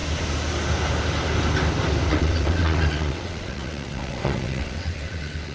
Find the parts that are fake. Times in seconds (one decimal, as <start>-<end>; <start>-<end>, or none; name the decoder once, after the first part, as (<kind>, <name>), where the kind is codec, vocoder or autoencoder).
2.1-5.5 (vocoder, WaveNeXt)